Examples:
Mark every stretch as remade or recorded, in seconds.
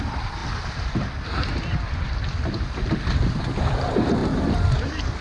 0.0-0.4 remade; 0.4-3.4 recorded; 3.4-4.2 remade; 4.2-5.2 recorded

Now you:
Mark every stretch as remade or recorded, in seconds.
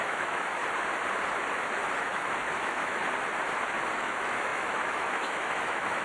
0.0-0.6 remade; 0.6-2.0 recorded; 2.0-3.0 remade; 3.0-4.0 recorded; 4.0-6.0 remade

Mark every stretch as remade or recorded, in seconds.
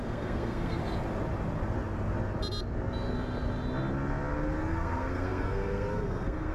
0.0-0.8 remade; 0.8-4.7 recorded; 4.7-6.5 remade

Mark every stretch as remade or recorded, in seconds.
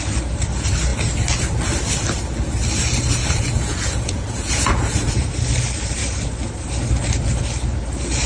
0.0-3.2 recorded; 3.2-5.3 remade; 5.3-8.3 recorded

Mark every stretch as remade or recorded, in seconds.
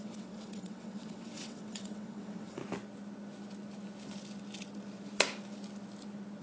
0.0-2.6 remade; 2.6-6.4 recorded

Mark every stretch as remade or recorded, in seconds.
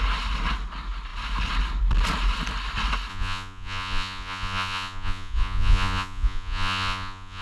0.0-3.1 recorded; 3.1-7.4 remade